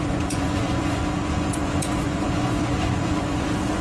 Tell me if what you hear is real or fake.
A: fake